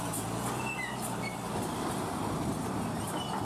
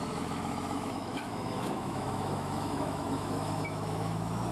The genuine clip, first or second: first